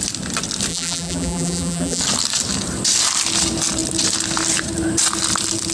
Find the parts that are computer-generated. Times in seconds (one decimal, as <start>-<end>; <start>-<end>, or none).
0.7-2.0